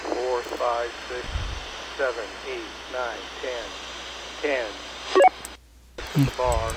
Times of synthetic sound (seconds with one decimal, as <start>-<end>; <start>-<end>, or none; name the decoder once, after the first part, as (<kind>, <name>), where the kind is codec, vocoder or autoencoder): none